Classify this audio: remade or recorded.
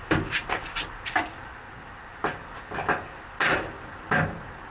recorded